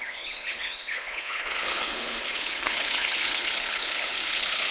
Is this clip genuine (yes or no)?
no